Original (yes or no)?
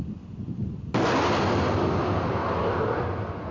yes